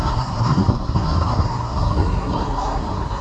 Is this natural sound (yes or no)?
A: no